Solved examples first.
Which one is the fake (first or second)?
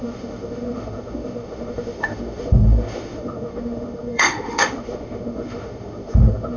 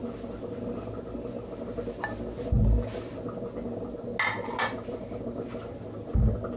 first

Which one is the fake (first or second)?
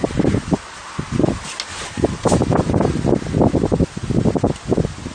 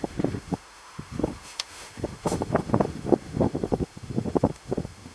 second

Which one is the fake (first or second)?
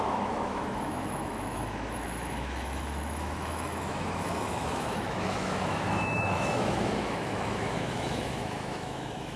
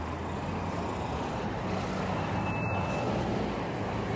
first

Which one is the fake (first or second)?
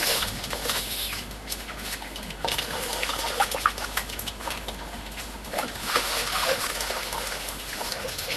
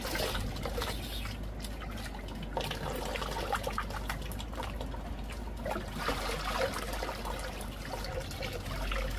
first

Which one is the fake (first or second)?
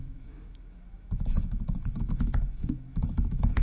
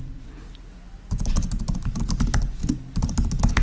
first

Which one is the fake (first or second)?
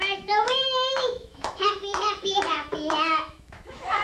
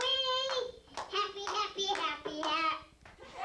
first